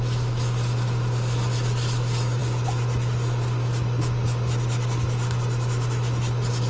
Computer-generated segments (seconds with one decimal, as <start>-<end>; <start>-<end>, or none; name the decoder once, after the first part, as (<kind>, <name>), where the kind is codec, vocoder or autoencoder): none